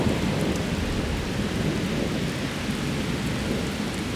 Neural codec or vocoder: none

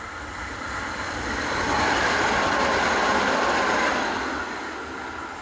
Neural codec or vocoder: none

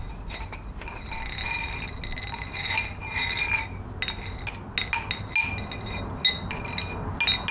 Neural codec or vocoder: none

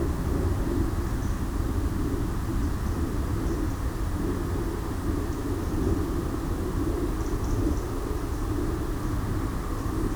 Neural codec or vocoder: none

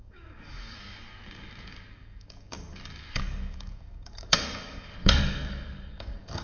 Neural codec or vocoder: codec, DAC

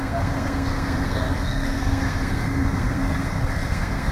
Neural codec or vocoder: codec, SNAC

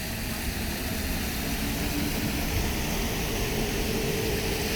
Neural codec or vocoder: none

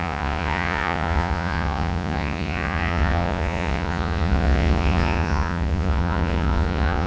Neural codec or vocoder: vocoder, Vocos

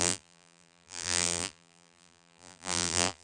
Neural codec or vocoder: vocoder, BigVGAN v2